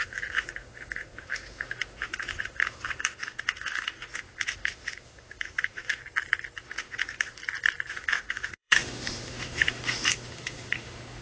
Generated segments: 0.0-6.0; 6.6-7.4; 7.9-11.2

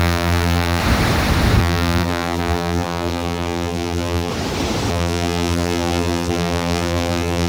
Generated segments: 0.0-0.8; 1.6-4.3; 4.9-7.5